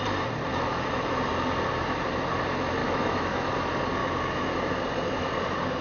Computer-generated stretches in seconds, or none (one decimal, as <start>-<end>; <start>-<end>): 0.5-1.1; 2.8-3.5; 4.0-4.7